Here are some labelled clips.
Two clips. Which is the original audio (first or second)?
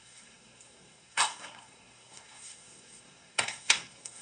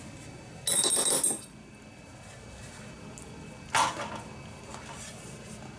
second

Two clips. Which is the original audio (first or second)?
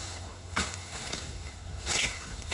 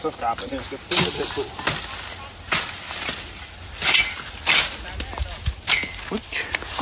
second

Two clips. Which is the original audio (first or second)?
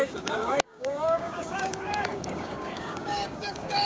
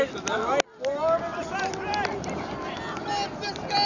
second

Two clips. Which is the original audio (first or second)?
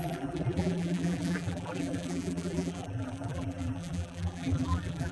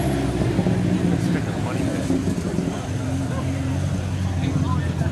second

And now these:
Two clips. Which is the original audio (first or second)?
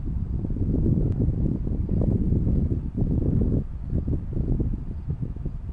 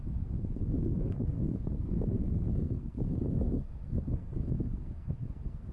first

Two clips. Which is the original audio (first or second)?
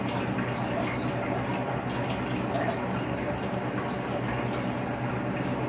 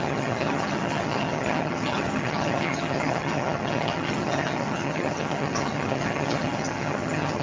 first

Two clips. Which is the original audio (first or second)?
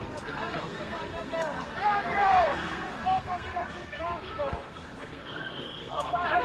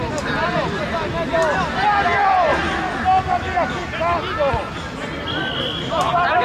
second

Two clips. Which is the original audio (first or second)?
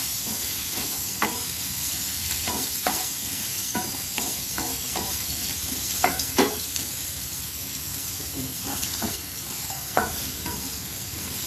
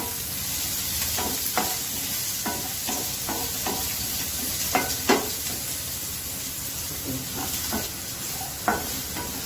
second